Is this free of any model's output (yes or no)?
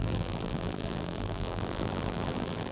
no